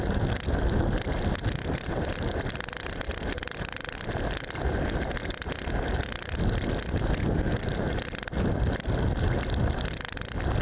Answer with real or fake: real